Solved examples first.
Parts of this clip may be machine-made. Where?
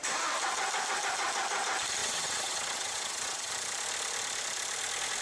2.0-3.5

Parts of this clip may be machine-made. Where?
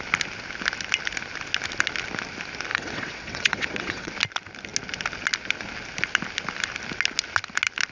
2.7-4.1